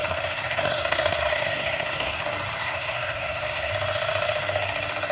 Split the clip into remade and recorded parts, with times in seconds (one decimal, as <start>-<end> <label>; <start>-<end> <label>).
0.0-2.2 remade; 2.2-2.6 recorded; 2.6-3.7 remade; 3.7-5.1 recorded